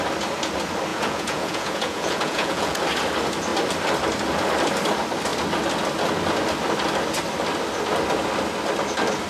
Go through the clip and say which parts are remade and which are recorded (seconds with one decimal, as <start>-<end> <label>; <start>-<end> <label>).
0.0-0.9 recorded; 0.9-2.8 remade; 2.8-9.3 recorded